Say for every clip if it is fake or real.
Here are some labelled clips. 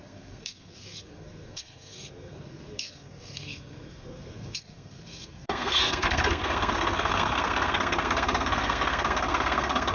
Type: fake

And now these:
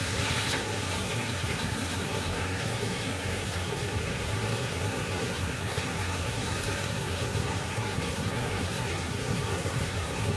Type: fake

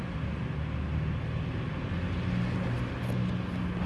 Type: real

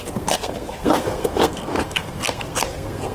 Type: fake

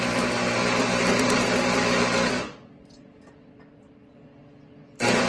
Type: real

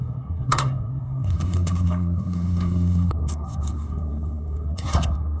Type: fake